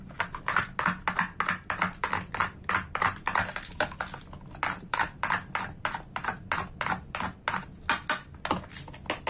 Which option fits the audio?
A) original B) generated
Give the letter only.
A